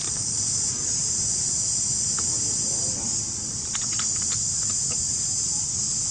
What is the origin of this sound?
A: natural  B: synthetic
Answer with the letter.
B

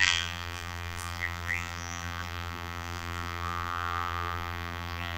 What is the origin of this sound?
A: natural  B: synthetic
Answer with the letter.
B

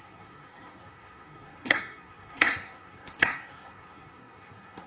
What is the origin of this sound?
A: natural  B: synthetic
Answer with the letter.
B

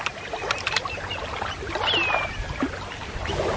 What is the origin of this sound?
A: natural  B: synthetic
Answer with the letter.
A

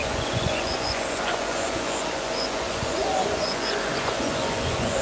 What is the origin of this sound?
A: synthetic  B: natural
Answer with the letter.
A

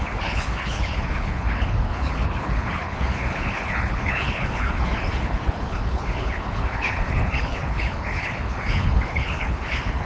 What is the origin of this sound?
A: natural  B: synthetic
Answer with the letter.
B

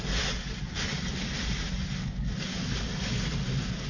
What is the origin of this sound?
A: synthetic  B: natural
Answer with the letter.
B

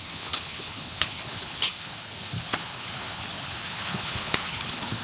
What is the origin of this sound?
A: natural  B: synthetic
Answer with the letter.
B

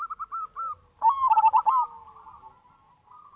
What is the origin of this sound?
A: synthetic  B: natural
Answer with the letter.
B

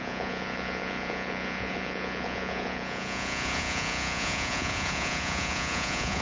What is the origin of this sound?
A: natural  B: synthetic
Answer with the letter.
B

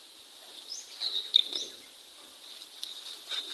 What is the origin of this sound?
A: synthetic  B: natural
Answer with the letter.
B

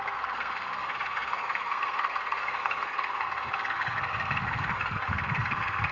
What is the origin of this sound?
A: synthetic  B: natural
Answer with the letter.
A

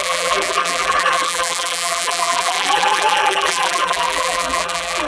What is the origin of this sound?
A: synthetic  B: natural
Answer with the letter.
A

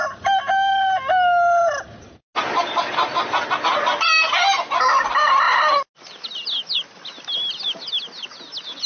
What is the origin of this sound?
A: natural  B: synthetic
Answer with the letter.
A